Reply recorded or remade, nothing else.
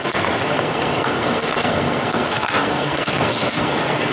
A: remade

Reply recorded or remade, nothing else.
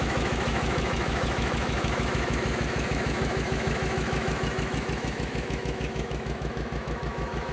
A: remade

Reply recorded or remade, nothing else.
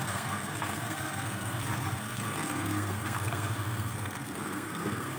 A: remade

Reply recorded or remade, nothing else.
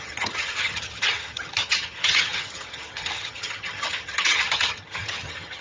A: remade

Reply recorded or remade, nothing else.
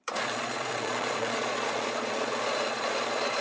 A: remade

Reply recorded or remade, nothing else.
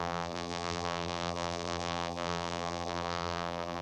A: remade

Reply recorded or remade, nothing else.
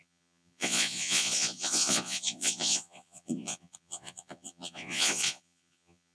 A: remade